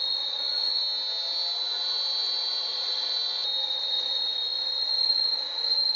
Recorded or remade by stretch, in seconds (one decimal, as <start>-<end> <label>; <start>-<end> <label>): 0.0-0.8 remade; 0.8-2.6 recorded; 2.6-3.1 remade; 3.1-3.6 recorded; 3.6-6.0 remade